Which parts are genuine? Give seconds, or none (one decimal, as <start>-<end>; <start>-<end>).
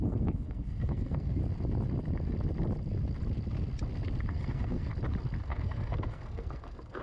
1.4-4.3; 4.9-5.4